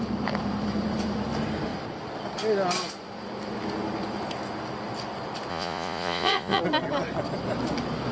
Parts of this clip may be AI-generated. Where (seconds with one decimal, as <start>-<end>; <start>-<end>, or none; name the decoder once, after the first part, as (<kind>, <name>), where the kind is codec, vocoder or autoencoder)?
5.5-6.6 (vocoder, Vocos)